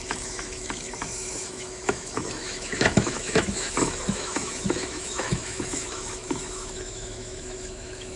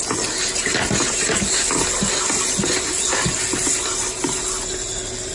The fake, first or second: first